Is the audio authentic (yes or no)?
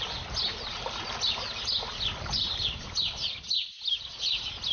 yes